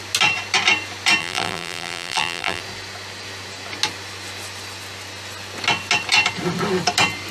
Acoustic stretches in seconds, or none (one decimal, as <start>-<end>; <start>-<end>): 0.0-1.2; 2.6-7.3